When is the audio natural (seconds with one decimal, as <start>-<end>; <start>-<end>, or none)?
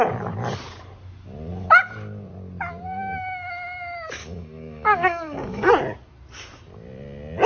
0.0-4.2; 5.7-7.5